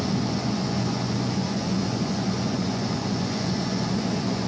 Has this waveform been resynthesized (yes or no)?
yes